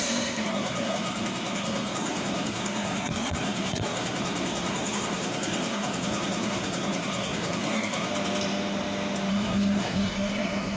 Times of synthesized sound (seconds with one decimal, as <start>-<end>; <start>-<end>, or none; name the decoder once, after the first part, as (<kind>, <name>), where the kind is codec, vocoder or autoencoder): 0.0-8.1 (codec, SNAC); 9.3-10.8